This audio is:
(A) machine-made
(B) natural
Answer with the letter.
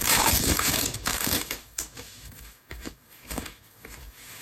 A